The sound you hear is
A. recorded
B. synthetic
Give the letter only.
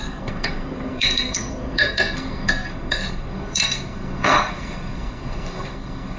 B